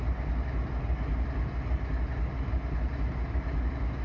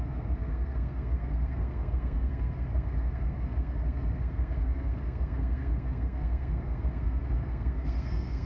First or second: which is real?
first